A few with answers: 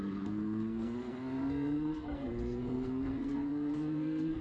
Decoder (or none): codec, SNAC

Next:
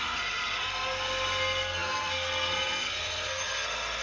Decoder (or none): codec, SNAC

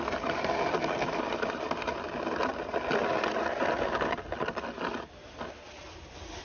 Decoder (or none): none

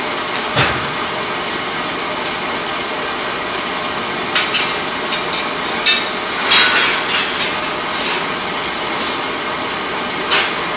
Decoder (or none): none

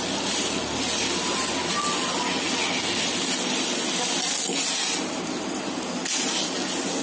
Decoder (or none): none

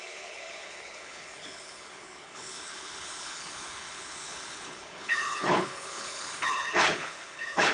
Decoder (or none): codec, HILCodec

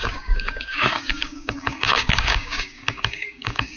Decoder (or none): codec, DAC